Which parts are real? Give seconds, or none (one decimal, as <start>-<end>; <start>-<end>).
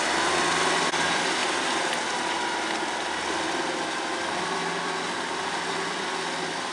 0.0-6.7